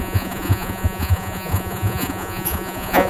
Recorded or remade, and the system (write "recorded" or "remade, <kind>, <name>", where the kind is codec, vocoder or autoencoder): remade, vocoder, Vocos